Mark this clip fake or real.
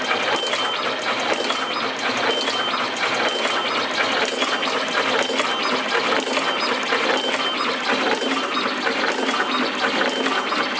real